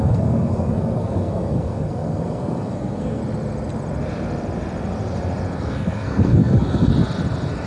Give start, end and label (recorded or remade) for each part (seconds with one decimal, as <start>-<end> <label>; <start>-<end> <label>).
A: 0.0-3.2 remade; 3.2-5.6 recorded; 5.6-6.9 remade; 6.9-7.7 recorded